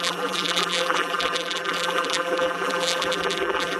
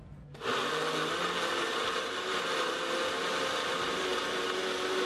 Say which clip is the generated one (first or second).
first